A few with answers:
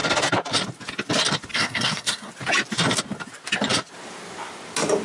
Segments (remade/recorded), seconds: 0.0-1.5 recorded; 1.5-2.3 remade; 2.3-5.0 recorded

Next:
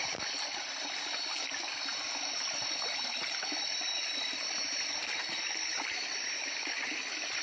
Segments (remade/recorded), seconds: 0.0-7.4 recorded

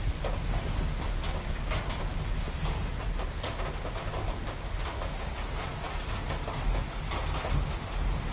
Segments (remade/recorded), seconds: 0.0-8.3 recorded

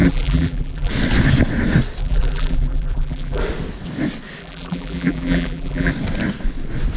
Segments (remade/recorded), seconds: 0.0-0.9 remade; 0.9-2.0 recorded; 2.0-3.4 remade; 3.4-4.4 recorded; 4.4-5.9 remade; 5.9-7.0 recorded

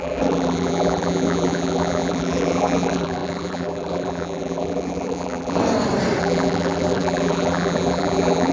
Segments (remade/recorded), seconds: 0.0-5.6 remade; 5.6-6.2 recorded; 6.2-8.5 remade